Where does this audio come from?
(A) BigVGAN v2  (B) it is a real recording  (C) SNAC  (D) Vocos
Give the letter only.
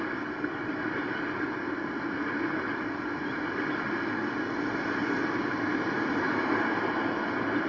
B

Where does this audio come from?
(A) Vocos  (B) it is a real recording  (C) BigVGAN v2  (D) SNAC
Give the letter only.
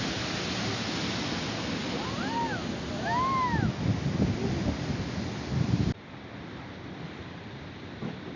B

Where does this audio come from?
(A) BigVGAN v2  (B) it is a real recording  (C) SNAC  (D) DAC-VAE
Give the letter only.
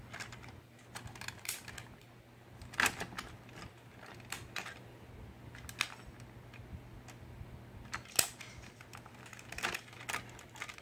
B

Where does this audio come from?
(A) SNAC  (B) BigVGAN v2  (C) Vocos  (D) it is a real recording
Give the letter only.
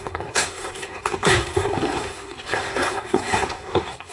A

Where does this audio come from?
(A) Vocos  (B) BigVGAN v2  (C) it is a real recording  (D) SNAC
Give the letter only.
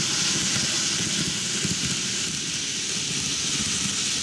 C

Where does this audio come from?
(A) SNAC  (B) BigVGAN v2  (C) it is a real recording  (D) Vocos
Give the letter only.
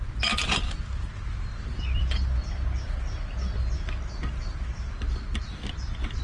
C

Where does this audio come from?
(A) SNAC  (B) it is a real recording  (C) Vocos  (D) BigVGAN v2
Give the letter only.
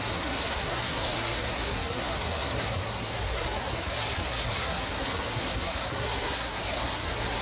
A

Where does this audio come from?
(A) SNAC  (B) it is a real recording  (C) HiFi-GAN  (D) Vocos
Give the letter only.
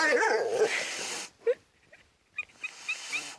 B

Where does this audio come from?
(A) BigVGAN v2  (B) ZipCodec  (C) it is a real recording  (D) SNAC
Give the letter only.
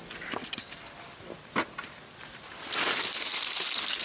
C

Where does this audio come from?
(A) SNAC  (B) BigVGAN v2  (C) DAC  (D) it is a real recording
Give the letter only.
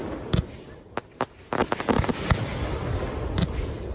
D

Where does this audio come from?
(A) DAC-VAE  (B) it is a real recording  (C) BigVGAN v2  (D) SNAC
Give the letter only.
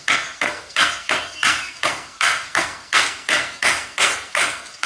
D